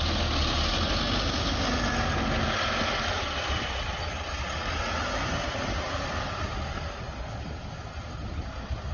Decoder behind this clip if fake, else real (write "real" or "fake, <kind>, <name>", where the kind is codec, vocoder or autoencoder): real